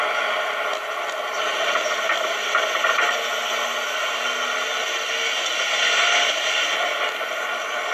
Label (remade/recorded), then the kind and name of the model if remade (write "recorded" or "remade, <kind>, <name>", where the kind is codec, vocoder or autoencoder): recorded